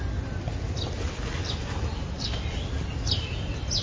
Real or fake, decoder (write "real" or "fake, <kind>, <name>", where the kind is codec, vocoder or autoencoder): real